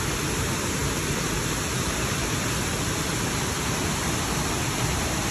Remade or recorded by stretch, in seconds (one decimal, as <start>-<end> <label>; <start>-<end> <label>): 0.0-5.3 recorded